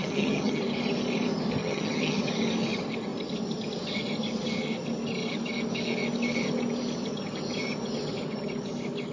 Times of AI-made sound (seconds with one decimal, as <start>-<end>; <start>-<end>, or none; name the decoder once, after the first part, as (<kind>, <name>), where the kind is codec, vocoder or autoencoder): 0.0-0.6 (vocoder, HiFi-GAN); 1.6-2.2